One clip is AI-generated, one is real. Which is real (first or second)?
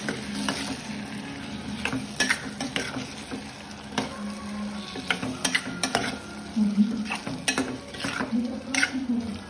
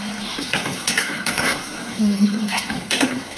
first